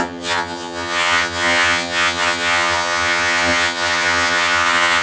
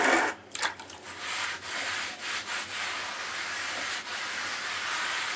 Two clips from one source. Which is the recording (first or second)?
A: second